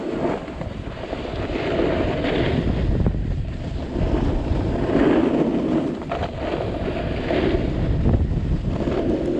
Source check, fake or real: real